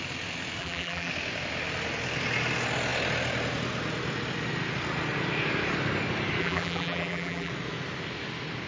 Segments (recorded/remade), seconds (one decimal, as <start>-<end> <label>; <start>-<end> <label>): 0.0-0.6 recorded; 0.6-1.1 remade; 1.1-6.4 recorded; 6.4-7.5 remade; 7.5-8.7 recorded